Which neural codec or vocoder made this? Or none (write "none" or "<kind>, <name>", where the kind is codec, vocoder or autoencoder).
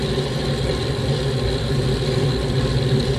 none